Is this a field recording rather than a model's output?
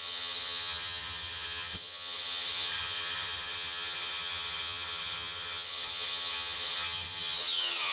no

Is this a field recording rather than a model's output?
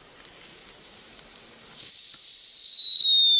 yes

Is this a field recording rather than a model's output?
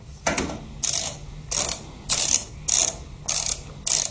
yes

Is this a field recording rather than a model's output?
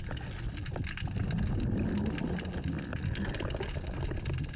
yes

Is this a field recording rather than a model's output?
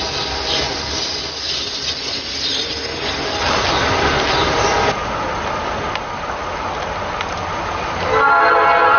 yes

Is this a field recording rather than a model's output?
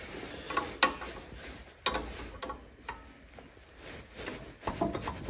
yes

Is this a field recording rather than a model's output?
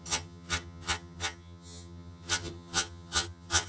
no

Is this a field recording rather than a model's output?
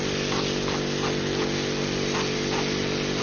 yes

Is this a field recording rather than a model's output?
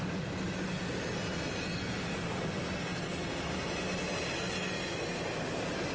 yes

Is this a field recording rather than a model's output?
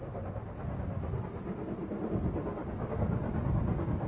yes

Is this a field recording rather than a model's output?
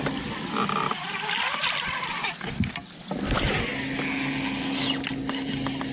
yes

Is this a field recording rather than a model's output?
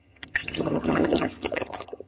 no